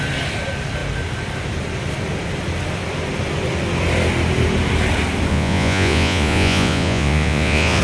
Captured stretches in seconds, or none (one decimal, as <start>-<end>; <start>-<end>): 0.0-5.3